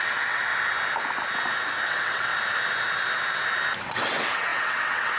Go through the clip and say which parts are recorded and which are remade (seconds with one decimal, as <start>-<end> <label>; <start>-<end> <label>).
0.0-0.5 remade; 0.5-1.9 recorded; 1.9-2.3 remade; 2.3-3.8 recorded; 3.8-5.2 remade